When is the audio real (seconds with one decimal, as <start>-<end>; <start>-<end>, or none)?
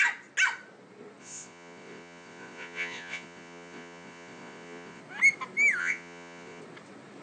0.0-1.2; 5.0-5.8; 6.6-7.2